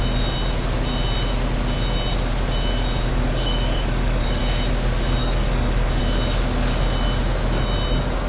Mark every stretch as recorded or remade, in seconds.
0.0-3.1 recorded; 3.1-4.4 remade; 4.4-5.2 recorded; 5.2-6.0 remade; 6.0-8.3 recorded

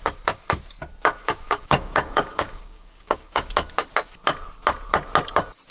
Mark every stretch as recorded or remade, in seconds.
0.0-1.1 recorded; 1.1-3.5 remade; 3.5-5.7 recorded

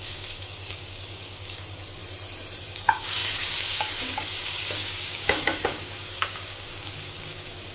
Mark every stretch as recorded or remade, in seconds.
0.0-2.0 remade; 2.0-2.6 recorded; 2.6-7.7 remade

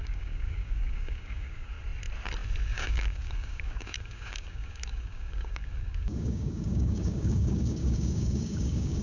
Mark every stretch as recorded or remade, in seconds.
0.0-1.7 remade; 1.7-2.7 recorded; 2.7-9.0 remade

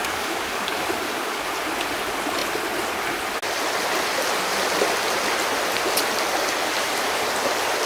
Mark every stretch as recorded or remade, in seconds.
0.0-1.5 remade; 1.5-7.9 recorded

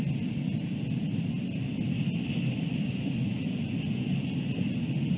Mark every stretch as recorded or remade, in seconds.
0.0-5.2 recorded